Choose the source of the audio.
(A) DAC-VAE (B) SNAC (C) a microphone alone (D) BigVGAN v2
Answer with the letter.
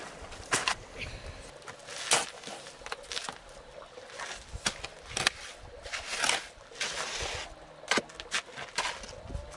C